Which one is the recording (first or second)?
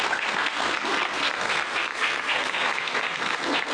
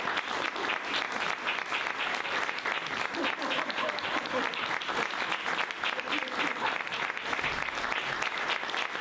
second